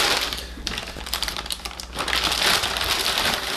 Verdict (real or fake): real